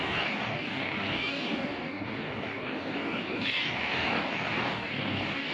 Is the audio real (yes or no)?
no